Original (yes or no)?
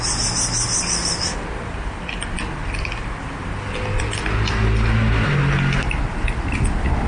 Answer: yes